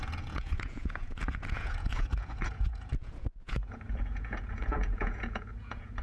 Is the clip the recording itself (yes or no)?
no